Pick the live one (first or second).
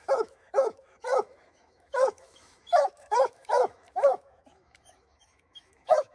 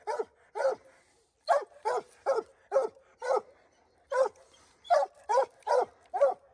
second